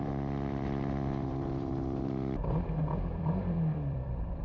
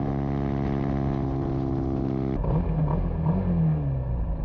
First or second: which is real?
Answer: second